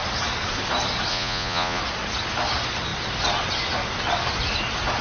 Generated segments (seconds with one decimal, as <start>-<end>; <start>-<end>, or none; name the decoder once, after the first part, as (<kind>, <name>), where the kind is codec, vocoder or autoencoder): 1.1-1.8 (vocoder, Vocos)